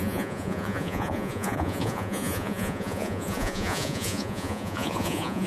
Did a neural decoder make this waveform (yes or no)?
yes